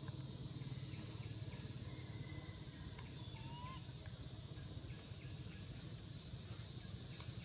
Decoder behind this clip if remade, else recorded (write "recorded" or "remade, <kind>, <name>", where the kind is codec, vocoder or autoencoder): recorded